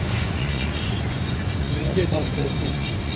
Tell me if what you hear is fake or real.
fake